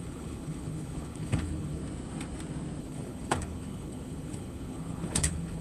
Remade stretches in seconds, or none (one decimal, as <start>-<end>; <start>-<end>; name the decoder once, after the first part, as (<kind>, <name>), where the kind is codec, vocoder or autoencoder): 0.0-1.8 (codec, HILCodec); 2.8-5.6